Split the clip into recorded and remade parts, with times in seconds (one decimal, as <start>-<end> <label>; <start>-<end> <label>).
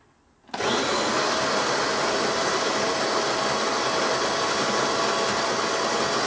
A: 0.0-2.0 recorded; 2.0-2.9 remade; 2.9-6.3 recorded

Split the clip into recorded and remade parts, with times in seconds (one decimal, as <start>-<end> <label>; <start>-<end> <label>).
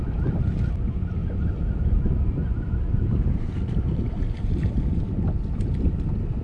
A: 0.0-1.2 recorded; 1.2-5.0 remade; 5.0-6.4 recorded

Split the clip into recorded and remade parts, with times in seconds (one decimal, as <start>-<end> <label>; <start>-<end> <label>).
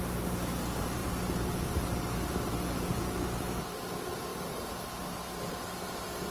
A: 0.0-6.3 recorded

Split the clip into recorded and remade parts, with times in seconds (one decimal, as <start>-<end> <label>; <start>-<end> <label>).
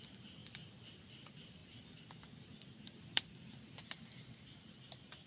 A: 0.0-0.4 recorded; 0.4-1.0 remade; 1.0-1.6 recorded; 1.6-4.3 remade; 4.3-5.3 recorded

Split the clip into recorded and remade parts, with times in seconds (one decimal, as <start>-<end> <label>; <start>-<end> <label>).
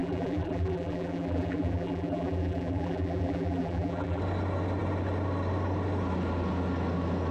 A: 0.0-4.2 remade; 4.2-7.3 recorded